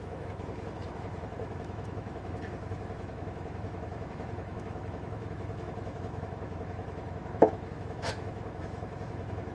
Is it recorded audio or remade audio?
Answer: remade